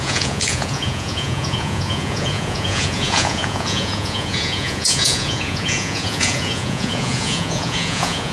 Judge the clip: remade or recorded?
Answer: remade